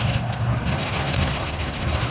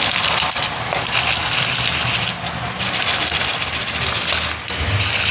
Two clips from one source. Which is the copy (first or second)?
first